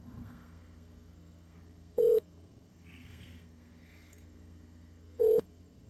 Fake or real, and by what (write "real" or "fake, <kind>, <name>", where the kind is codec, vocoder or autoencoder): fake, codec, SNAC